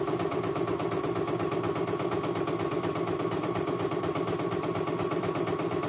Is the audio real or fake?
fake